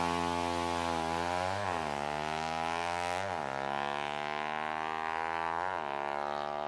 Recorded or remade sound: recorded